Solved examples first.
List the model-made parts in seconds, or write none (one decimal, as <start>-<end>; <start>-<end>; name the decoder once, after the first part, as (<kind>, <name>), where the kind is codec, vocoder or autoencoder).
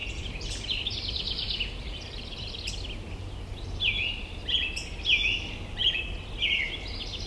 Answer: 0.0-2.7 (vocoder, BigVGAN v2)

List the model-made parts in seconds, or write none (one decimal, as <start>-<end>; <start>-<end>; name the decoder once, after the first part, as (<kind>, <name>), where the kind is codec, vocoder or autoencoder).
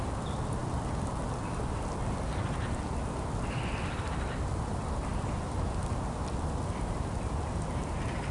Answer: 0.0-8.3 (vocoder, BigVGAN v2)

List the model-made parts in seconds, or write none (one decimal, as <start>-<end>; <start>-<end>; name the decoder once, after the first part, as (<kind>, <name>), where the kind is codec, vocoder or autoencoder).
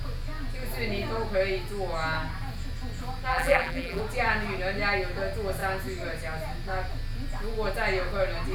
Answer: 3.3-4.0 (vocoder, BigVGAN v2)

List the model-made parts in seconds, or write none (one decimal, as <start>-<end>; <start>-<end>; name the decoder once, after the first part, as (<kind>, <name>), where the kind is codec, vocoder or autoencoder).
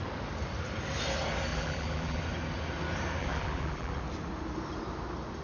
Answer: 1.5-2.2 (vocoder, BigVGAN v2); 3.2-4.0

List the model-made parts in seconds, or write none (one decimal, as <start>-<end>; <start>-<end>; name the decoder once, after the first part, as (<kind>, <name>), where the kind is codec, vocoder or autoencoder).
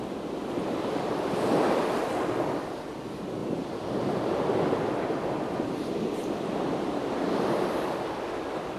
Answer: none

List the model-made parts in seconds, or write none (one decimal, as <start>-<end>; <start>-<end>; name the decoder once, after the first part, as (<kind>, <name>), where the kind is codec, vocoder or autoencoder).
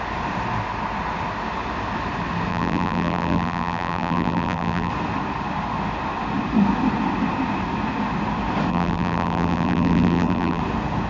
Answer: 2.5-4.9 (vocoder, BigVGAN v2); 8.7-10.6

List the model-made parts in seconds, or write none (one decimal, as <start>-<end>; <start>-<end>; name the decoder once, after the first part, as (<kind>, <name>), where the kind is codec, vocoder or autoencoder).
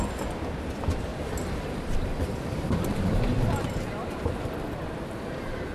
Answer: 1.1-4.5 (vocoder, BigVGAN v2)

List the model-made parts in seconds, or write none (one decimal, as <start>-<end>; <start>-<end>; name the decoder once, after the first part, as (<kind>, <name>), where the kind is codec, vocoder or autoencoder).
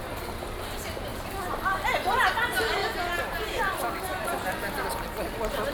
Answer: none